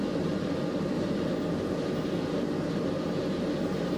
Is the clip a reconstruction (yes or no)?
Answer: no